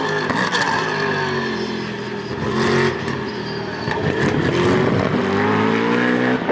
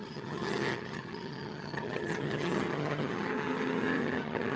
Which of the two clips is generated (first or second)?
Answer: second